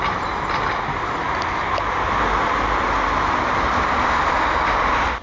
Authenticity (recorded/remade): recorded